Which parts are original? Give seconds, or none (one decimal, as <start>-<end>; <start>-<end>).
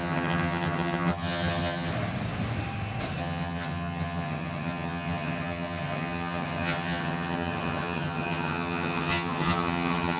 1.9-3.2